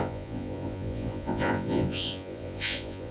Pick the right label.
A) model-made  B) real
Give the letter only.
A